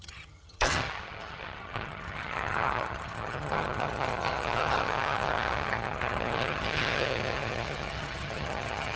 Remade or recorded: remade